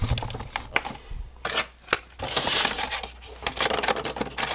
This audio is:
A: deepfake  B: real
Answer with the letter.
B